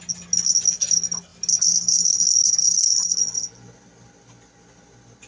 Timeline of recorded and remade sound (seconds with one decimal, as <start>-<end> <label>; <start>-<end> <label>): 0.0-5.3 recorded